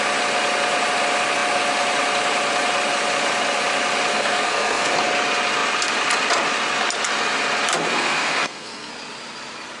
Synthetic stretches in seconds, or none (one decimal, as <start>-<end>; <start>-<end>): 4.1-4.9; 7.9-8.9